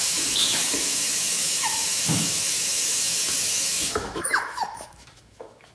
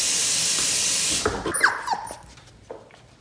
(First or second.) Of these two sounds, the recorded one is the second